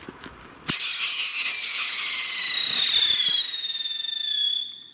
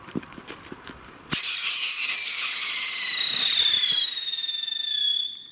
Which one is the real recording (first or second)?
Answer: first